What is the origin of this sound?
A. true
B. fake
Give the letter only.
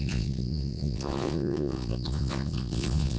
B